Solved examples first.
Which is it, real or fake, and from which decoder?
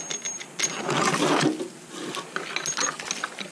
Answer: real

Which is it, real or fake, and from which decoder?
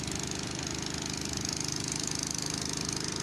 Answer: real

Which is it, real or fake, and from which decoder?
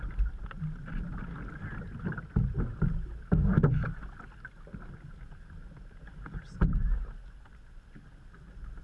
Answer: real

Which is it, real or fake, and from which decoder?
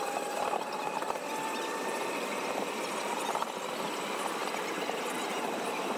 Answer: real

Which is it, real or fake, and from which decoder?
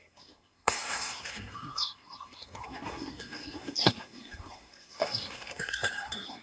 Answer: fake, codec, SNAC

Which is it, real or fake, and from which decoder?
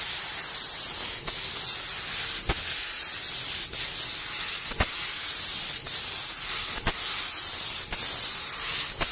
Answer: real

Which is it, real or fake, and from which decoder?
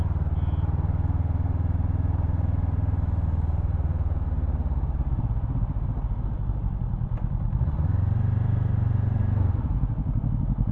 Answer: real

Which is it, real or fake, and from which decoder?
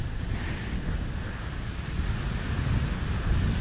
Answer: real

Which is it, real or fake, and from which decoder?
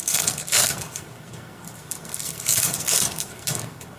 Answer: fake, codec, SNAC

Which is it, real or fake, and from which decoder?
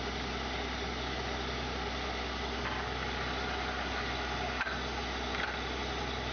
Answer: real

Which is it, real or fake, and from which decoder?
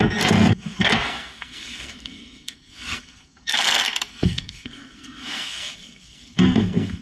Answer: fake, codec, SNAC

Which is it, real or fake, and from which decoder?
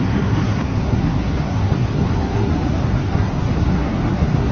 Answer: fake, codec, SNAC